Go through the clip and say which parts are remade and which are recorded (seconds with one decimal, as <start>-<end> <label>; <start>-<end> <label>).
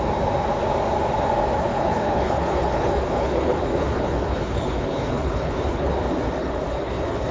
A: 0.0-1.7 recorded; 1.7-5.9 remade; 5.9-6.4 recorded; 6.4-7.3 remade